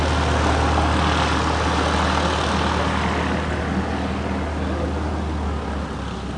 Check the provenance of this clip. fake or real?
real